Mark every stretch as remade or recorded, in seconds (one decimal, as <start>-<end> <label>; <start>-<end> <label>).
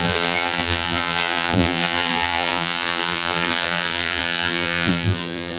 0.0-5.6 remade